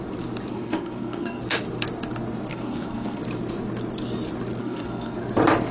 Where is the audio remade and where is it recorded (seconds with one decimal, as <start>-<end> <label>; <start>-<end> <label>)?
0.0-0.5 recorded; 0.5-1.4 remade; 1.4-2.5 recorded; 2.5-3.2 remade; 3.2-4.6 recorded; 4.6-5.2 remade; 5.2-5.7 recorded